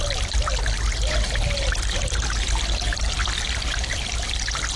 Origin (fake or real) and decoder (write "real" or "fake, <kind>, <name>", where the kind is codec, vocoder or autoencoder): fake, vocoder, BigVGAN v2